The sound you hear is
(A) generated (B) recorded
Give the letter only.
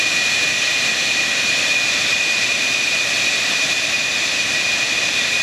B